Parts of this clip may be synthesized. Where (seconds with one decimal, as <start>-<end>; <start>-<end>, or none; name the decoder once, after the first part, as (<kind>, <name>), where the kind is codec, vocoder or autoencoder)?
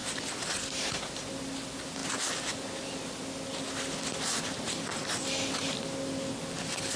none